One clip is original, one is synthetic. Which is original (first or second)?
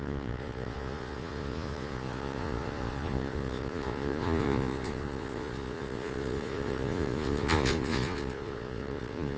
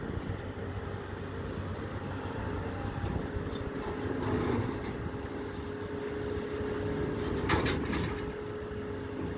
second